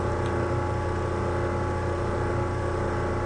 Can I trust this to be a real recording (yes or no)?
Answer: yes